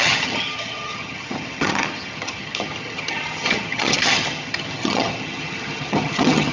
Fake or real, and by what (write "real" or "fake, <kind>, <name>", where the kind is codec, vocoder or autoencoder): fake, vocoder, HiFi-GAN